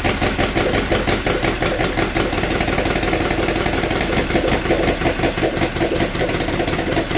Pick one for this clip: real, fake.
real